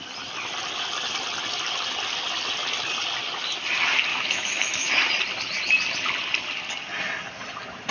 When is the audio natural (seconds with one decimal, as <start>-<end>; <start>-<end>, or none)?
0.0-4.1; 4.9-7.9